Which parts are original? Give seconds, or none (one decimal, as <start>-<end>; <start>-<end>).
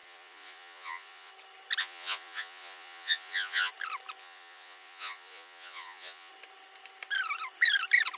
1.3-1.8; 3.7-4.2; 6.3-8.2